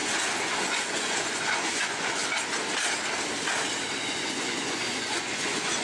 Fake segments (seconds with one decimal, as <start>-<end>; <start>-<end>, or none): 0.0-2.2; 4.0-5.8